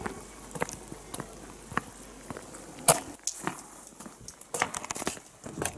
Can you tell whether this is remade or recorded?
recorded